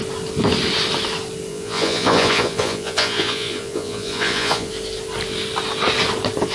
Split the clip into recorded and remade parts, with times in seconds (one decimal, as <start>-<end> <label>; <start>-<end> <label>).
0.0-1.5 recorded; 1.5-4.7 remade; 4.7-6.5 recorded